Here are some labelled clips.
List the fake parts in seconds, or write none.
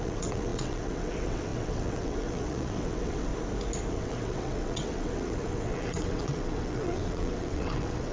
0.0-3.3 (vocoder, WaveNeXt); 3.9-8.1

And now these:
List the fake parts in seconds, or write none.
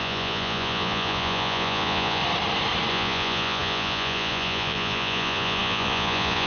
0.0-2.2 (vocoder, Vocos); 2.9-6.5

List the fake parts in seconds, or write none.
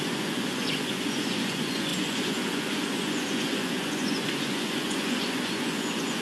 0.0-6.2 (vocoder, Vocos)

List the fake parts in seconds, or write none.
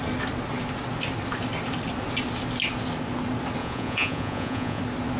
3.6-4.8 (vocoder, Vocos)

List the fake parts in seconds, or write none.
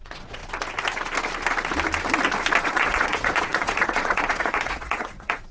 0.0-0.4 (vocoder, Vocos); 2.6-5.5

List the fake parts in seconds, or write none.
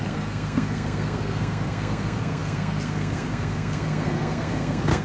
0.0-5.0 (codec, SNAC)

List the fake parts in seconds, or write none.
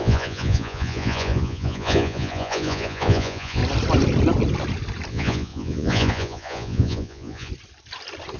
0.0-3.6 (vocoder, Vocos); 5.1-7.5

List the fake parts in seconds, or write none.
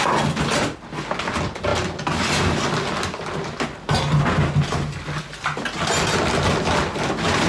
none